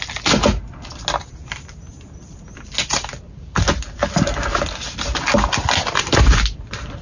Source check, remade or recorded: recorded